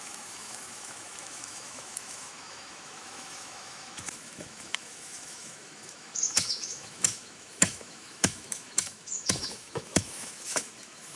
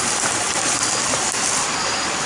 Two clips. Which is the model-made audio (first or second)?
first